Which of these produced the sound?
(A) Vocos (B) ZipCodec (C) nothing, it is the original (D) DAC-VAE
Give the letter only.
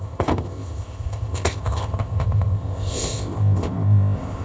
B